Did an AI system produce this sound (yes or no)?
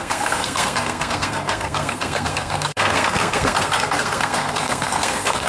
yes